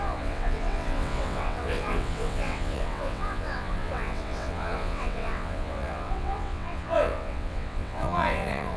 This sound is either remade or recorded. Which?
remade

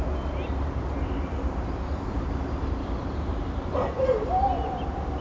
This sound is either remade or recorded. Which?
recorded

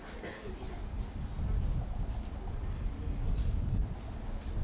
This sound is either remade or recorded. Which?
recorded